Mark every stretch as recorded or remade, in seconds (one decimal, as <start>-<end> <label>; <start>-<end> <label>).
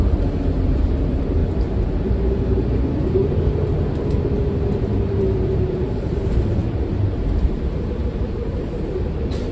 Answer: 0.0-1.4 remade; 1.4-5.2 recorded; 5.2-9.5 remade